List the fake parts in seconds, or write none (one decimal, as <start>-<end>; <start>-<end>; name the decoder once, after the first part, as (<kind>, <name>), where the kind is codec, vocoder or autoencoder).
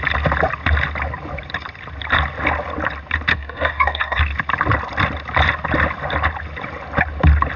3.3-4.2 (codec, SNAC)